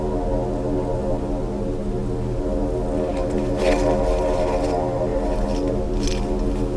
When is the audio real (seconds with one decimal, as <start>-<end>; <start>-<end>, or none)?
0.0-6.8